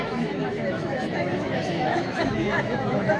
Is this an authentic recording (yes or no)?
no